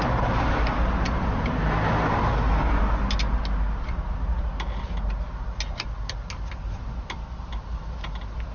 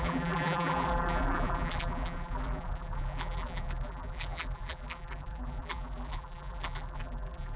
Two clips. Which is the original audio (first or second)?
first